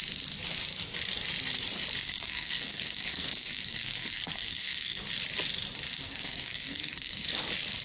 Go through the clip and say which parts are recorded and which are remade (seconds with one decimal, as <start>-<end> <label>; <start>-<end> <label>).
0.0-2.0 recorded; 2.0-5.0 remade; 5.0-5.9 recorded; 5.9-7.3 remade; 7.3-7.8 recorded